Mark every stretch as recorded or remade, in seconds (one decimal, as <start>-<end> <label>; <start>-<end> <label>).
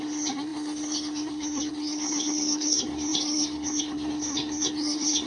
0.0-5.3 remade